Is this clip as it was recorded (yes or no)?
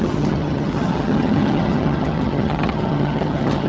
no